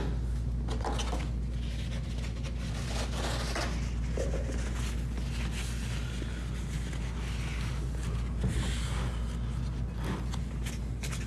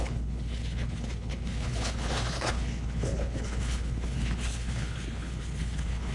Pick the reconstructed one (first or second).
second